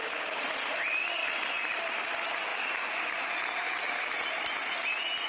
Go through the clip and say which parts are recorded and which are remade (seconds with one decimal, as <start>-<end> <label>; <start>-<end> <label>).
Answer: 0.0-5.3 recorded